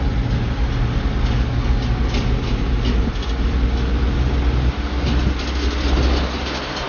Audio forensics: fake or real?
real